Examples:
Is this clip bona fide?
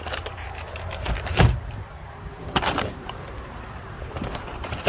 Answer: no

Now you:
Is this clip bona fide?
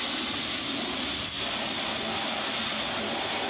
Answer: yes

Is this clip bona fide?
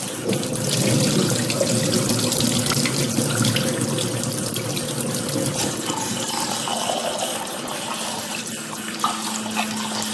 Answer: yes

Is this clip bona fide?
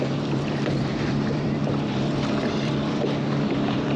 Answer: no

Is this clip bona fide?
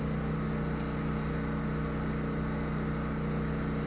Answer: yes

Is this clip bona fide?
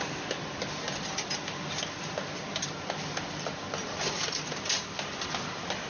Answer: yes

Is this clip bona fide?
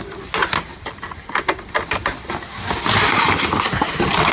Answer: no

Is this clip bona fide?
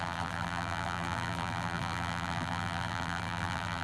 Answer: no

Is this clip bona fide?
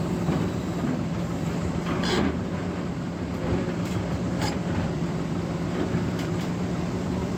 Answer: no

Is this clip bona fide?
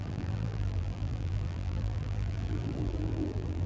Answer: no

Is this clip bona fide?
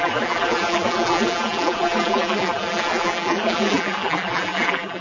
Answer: no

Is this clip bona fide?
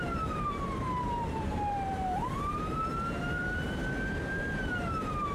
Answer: no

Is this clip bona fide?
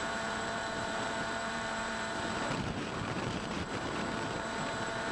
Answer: no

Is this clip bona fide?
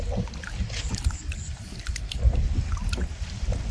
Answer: yes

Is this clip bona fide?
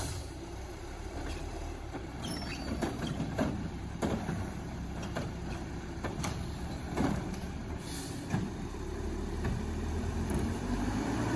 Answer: no